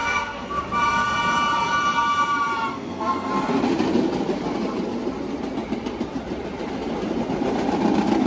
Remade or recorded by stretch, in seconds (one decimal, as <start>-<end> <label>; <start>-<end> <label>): 0.0-0.6 remade; 0.6-2.7 recorded; 2.7-3.3 remade; 3.3-8.3 recorded